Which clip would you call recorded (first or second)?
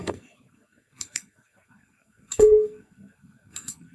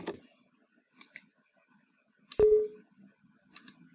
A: second